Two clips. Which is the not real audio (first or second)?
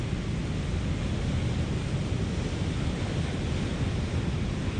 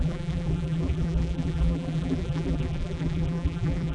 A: second